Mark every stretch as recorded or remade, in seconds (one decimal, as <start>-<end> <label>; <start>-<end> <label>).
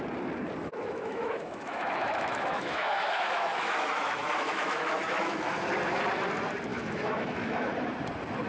0.0-0.6 recorded; 0.6-5.6 remade; 5.6-6.7 recorded; 6.7-7.7 remade; 7.7-8.5 recorded